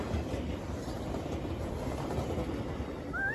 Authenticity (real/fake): fake